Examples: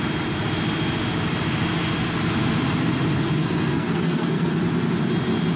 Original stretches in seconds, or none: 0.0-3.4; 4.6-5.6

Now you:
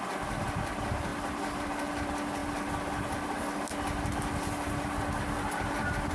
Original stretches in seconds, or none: 0.0-2.4

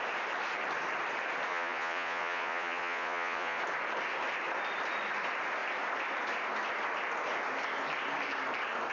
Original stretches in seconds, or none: 0.0-1.5; 3.6-8.9